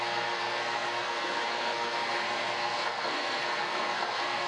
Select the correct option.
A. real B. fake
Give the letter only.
B